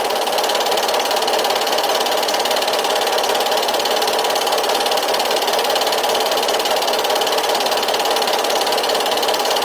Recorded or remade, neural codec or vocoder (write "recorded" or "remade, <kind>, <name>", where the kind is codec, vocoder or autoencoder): recorded